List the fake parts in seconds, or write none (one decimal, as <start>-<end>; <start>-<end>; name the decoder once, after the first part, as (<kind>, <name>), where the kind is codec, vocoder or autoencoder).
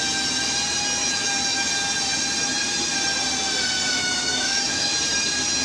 1.0-1.7 (autoencoder, DAC-VAE); 4.0-4.9